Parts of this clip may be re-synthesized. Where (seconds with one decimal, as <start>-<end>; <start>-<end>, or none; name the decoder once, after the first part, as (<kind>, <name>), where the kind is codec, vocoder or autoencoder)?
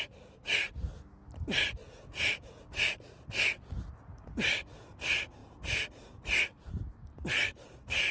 1.8-2.6 (vocoder, Vocos)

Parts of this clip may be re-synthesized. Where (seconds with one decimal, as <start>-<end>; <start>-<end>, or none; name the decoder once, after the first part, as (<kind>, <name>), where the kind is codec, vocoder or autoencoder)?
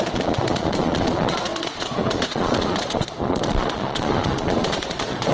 0.0-5.3 (vocoder, Vocos)